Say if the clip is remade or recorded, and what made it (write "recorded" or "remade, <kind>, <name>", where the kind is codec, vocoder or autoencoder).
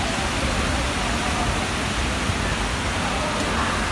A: recorded